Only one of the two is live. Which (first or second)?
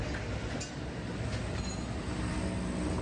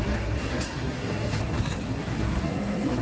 first